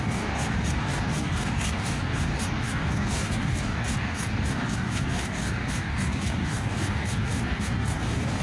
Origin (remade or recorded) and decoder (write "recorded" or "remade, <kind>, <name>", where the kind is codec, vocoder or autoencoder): remade, codec, DAC